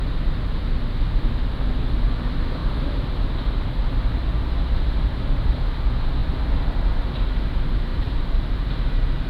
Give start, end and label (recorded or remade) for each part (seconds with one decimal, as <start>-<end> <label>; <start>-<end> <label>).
0.0-7.9 recorded; 7.9-8.5 remade; 8.5-9.3 recorded